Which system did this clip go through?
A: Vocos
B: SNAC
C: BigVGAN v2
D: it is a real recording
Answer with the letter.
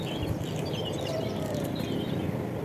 D